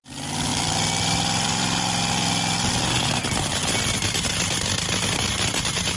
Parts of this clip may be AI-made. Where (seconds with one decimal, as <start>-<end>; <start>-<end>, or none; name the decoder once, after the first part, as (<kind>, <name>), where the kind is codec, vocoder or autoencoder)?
0.5-2.6 (vocoder, BigVGAN v2)